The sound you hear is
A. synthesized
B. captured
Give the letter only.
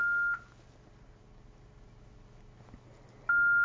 B